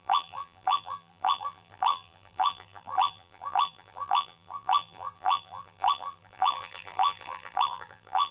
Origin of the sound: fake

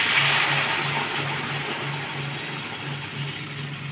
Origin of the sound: real